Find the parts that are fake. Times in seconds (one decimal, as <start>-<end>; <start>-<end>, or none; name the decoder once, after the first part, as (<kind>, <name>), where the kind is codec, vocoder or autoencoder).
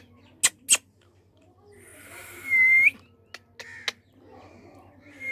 none